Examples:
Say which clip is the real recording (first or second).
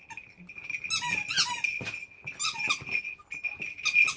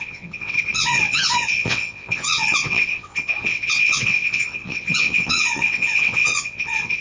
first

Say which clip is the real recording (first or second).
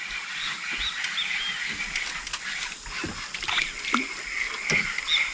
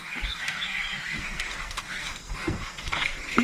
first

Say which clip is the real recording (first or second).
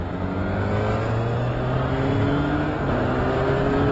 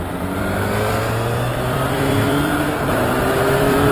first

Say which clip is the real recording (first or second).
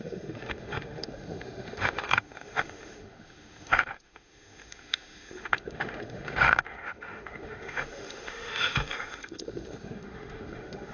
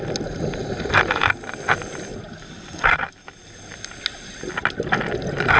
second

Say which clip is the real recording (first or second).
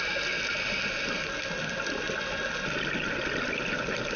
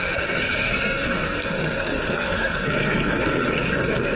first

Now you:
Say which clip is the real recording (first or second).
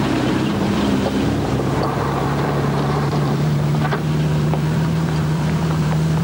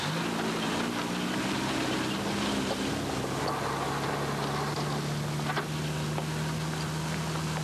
second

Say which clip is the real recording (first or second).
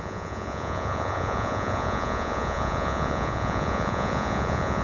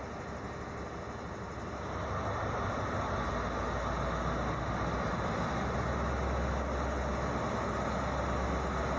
second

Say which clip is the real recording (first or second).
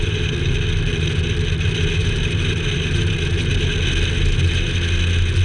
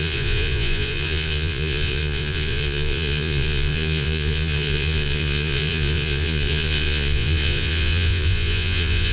first